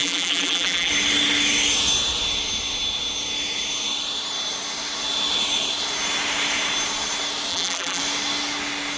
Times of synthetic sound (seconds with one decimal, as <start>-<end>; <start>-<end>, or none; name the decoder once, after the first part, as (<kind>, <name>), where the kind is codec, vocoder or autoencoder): 0.0-0.9 (vocoder, BigVGAN v2); 7.5-8.0